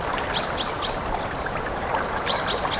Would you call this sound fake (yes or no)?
no